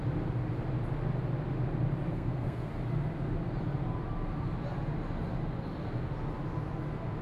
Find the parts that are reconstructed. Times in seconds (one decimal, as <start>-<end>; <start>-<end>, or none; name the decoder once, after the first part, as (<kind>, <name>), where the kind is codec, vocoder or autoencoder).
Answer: 2.1-2.7 (codec, SNAC)